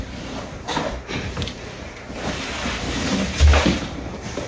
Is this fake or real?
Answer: fake